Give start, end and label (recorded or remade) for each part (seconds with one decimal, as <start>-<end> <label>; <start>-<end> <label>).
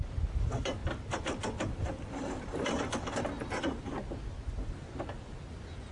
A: 0.0-5.9 recorded